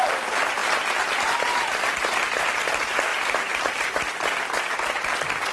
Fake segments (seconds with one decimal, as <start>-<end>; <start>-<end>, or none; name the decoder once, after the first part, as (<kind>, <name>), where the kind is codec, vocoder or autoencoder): 3.1-4.0 (vocoder, BigVGAN v2)